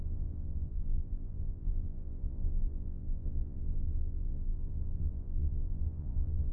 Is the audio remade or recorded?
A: remade